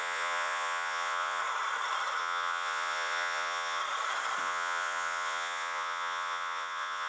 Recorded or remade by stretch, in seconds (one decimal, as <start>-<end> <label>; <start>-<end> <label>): 0.0-1.4 remade; 1.4-2.2 recorded; 2.2-3.8 remade; 3.8-4.4 recorded; 4.4-7.1 remade